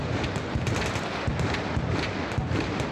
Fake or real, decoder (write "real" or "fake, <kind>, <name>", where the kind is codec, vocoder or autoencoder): real